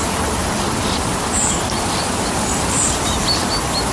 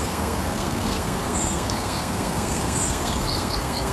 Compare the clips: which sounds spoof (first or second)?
second